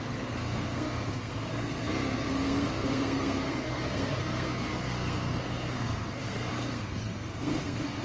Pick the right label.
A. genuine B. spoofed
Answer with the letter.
B